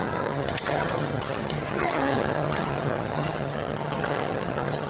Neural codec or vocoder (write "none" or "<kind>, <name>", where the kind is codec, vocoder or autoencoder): vocoder, HiFi-GAN